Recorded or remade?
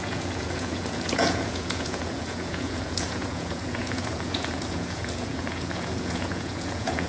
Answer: remade